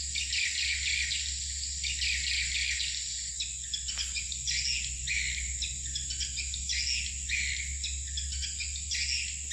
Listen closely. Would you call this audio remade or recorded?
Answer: recorded